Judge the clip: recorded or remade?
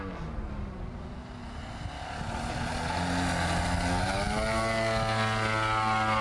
recorded